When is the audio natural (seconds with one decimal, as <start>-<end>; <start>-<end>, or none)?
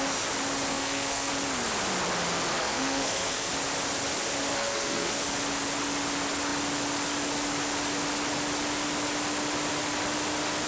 0.0-0.7; 1.3-2.6; 3.5-4.5; 5.1-10.7